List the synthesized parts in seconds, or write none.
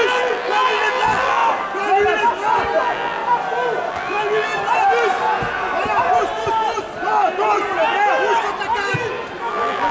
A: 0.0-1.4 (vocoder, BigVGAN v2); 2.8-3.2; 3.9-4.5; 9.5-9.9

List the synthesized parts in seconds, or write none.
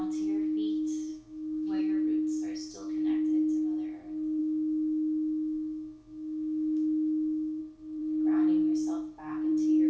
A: 1.1-1.8 (autoencoder, DAC-VAE); 4.4-7.6